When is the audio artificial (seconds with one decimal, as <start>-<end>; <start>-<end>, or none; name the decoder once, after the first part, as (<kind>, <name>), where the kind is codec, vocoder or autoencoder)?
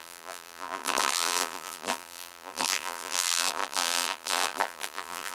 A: 0.0-5.3 (vocoder, BigVGAN v2)